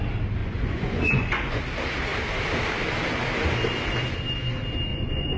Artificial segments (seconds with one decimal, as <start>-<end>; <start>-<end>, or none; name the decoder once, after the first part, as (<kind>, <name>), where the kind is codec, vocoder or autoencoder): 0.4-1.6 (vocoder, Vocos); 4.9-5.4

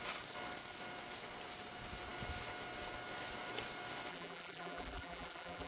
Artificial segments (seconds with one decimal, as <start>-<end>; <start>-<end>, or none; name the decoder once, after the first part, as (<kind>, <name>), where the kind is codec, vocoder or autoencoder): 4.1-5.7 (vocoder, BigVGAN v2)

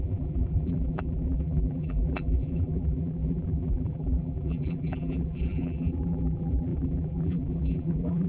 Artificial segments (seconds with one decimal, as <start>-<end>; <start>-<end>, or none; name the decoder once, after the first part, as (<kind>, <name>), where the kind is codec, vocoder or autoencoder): 0.0-8.3 (vocoder, BigVGAN v2)

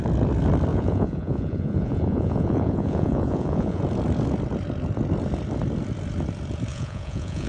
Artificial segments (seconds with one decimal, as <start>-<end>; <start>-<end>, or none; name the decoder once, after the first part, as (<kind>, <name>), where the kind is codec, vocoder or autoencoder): 0.7-3.8 (vocoder, Vocos); 6.7-7.5

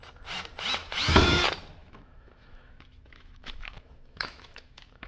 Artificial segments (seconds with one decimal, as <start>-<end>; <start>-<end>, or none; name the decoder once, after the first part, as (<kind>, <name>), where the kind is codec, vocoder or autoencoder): 0.8-1.4 (autoencoder, DAC-VAE); 1.8-5.1

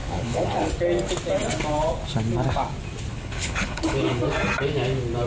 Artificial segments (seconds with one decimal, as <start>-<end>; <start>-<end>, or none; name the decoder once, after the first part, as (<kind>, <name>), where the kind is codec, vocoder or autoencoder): 0.0-0.6 (codec, HILCodec); 3.1-4.2